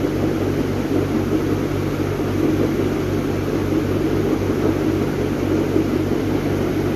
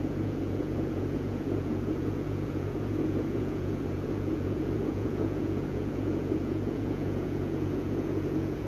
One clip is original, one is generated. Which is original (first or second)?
first